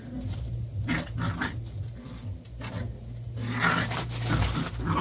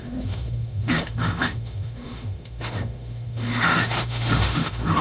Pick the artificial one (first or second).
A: second